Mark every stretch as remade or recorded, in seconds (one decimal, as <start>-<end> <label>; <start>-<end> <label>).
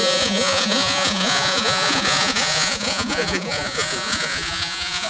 0.0-5.1 remade